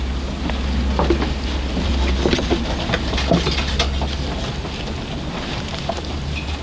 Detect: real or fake real